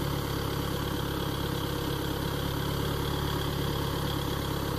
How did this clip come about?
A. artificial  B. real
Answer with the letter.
B